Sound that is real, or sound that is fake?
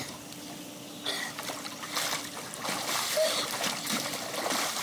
fake